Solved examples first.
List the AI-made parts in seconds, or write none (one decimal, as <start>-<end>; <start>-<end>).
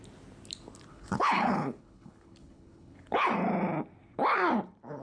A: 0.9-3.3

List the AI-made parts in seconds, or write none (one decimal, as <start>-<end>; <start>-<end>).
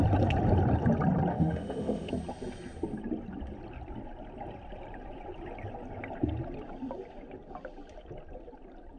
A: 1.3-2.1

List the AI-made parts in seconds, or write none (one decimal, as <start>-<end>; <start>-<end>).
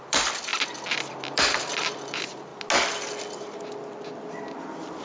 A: 0.0-2.5; 4.1-5.0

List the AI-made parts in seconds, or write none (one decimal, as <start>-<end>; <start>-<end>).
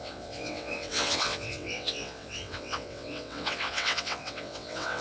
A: 0.0-5.0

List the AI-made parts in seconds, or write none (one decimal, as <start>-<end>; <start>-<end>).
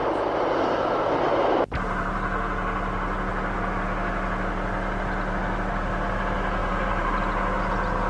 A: 0.0-1.1; 6.6-7.2